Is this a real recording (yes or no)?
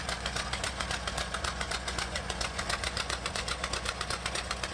no